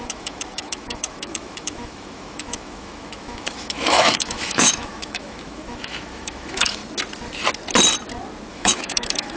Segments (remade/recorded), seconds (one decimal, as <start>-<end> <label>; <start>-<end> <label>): 0.0-6.8 remade; 6.8-8.5 recorded; 8.5-9.4 remade